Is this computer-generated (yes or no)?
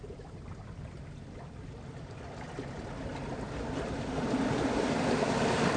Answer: no